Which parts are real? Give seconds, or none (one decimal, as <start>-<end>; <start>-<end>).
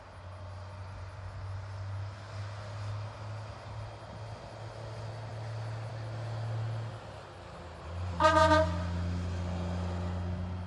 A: 0.0-10.7